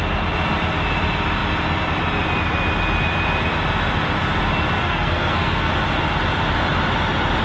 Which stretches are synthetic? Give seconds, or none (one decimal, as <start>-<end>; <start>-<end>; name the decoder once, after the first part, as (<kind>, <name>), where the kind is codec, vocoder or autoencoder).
4.8-5.7 (codec, SNAC)